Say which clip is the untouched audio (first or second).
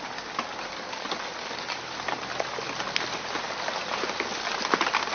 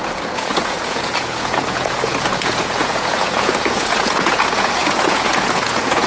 first